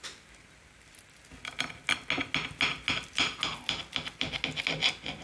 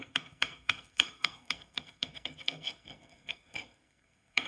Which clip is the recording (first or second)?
first